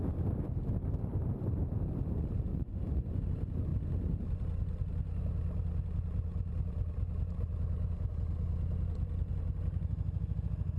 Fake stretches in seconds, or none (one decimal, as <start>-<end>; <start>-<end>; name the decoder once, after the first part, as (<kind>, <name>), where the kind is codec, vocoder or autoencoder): 2.5-3.2 (vocoder, Vocos)